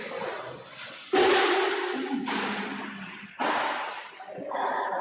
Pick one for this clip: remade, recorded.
recorded